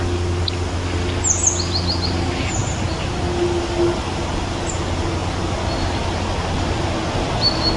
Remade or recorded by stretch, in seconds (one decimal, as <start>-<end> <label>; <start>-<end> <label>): 0.0-7.8 recorded